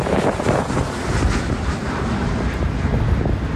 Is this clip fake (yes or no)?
no